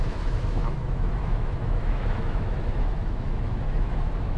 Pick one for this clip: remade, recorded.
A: remade